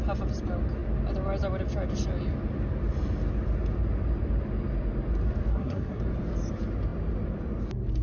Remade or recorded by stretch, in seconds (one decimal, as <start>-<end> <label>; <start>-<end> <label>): 0.0-5.5 recorded; 5.5-6.0 remade; 6.0-8.0 recorded